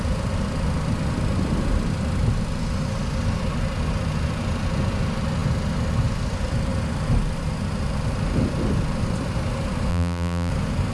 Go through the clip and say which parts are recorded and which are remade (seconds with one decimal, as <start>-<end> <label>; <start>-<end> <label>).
0.0-9.9 recorded; 9.9-10.5 remade; 10.5-10.9 recorded